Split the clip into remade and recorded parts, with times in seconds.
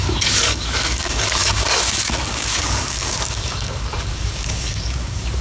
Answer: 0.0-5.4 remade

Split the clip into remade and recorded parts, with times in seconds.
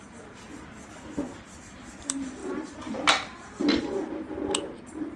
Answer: 0.0-0.5 remade; 0.5-1.4 recorded; 1.4-2.4 remade; 2.4-5.2 recorded